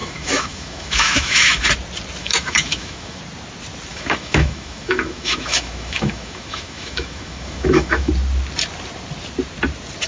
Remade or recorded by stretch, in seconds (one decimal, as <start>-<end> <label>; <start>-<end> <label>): 0.0-1.7 remade; 1.7-2.2 recorded; 2.2-3.2 remade; 3.2-3.9 recorded; 3.9-8.1 remade; 8.1-10.1 recorded